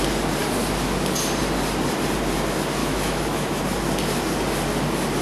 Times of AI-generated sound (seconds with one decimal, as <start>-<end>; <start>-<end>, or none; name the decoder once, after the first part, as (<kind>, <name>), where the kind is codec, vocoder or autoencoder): 2.8-3.6 (autoencoder, DAC-VAE)